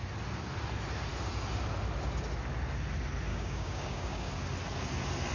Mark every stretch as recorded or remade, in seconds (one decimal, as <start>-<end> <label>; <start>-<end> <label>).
0.0-3.3 recorded; 3.3-4.3 remade; 4.3-5.3 recorded